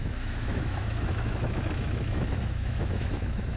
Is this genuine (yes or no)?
no